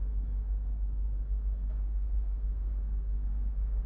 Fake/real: fake